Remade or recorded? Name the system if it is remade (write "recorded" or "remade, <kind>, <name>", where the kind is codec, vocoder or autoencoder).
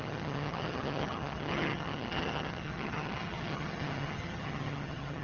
remade, vocoder, HiFi-GAN